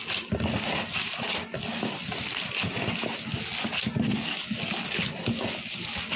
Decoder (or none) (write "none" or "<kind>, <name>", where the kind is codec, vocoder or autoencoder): none